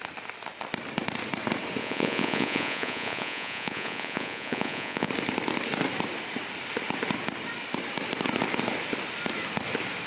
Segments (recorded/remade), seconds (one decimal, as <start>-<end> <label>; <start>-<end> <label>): 0.0-1.8 recorded; 1.8-5.1 remade; 5.1-10.1 recorded